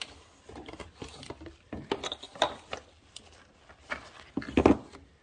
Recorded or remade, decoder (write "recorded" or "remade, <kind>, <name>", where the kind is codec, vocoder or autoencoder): recorded